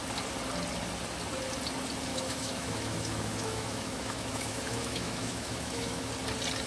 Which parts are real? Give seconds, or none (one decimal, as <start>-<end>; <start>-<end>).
0.0-2.1; 6.1-6.7

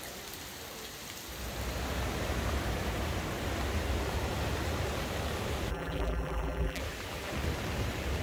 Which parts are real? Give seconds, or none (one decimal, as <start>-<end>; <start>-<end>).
0.0-5.7; 6.8-8.2